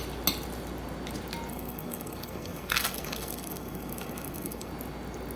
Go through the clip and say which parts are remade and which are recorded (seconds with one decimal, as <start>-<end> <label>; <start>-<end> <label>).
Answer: 0.0-1.5 recorded; 1.5-4.7 remade; 4.7-5.4 recorded